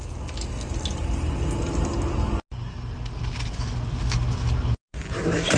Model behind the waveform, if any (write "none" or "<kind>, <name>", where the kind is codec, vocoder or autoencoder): none